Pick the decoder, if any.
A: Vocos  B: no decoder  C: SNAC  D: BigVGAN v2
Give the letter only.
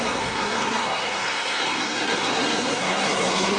C